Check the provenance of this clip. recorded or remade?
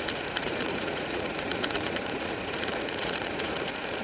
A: remade